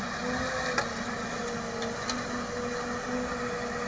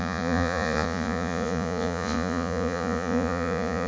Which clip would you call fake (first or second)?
second